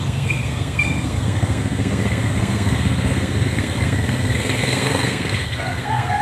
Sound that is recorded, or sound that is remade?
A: remade